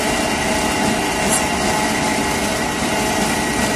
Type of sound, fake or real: real